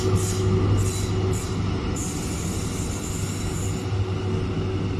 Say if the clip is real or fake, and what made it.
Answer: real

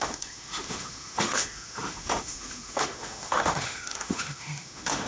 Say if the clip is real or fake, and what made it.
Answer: fake, autoencoder, DAC-VAE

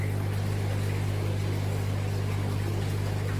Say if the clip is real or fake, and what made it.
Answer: real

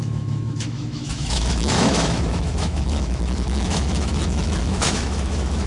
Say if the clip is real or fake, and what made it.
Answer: fake, autoencoder, DAC-VAE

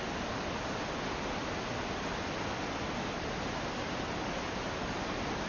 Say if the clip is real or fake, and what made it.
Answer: real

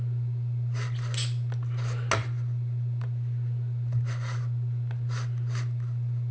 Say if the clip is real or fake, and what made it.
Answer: real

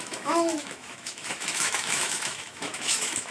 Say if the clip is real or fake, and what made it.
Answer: fake, autoencoder, DAC-VAE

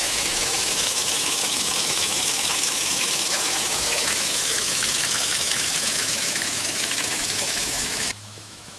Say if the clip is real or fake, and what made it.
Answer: fake, autoencoder, DAC-VAE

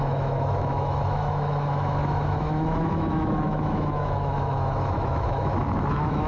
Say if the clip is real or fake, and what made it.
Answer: fake, autoencoder, DAC-VAE